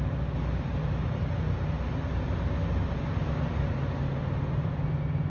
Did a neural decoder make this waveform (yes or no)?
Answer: no